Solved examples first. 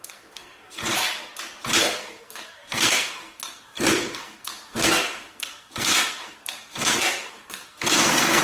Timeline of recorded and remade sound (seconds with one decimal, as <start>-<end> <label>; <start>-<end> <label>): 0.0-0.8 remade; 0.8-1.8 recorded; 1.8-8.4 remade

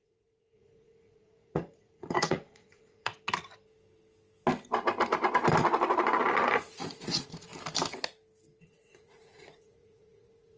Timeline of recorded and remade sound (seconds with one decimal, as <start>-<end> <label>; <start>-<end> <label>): 0.0-3.1 remade; 3.1-6.5 recorded; 6.5-7.5 remade; 7.5-8.6 recorded; 8.6-10.6 remade

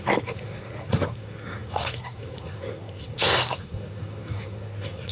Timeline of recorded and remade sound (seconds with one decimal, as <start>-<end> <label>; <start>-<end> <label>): 0.0-5.1 remade